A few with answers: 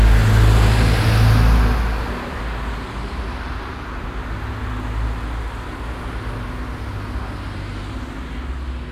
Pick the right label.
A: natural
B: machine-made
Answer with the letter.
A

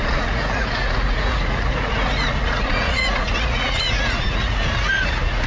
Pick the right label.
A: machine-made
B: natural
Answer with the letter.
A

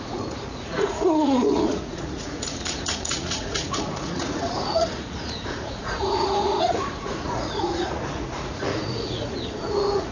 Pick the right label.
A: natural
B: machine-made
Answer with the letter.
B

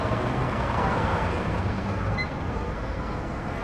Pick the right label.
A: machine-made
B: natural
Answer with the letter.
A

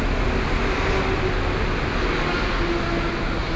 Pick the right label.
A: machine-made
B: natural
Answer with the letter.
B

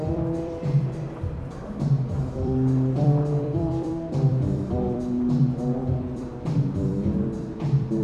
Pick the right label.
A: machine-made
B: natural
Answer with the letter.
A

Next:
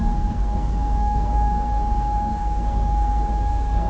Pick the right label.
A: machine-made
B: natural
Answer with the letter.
A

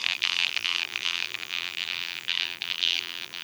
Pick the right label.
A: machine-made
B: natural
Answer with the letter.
A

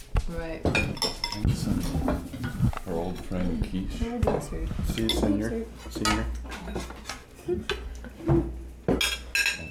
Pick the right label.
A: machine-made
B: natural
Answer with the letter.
B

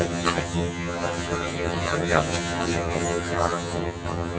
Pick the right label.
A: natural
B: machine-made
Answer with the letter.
B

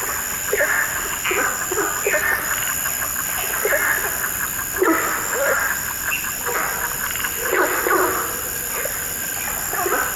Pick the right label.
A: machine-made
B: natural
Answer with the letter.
B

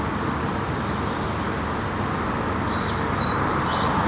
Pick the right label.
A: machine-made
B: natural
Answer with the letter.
B